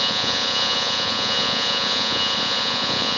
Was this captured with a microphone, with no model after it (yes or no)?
no